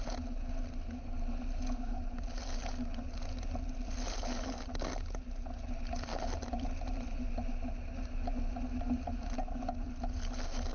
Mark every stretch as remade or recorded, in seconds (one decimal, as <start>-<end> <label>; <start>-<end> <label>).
0.0-10.7 recorded